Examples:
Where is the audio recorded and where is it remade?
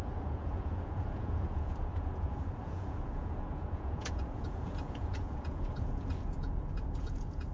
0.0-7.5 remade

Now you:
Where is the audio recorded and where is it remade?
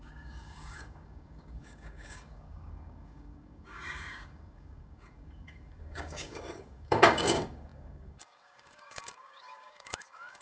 0.0-10.4 remade